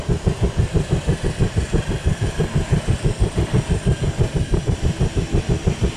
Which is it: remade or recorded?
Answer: recorded